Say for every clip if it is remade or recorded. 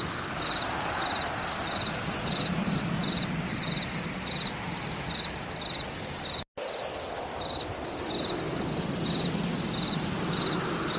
recorded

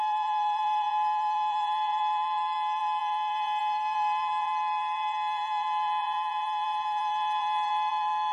remade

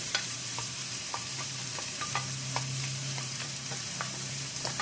remade